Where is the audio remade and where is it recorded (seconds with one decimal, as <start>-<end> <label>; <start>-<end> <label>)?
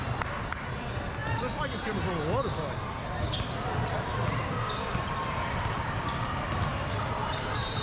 0.0-6.7 recorded; 6.7-7.8 remade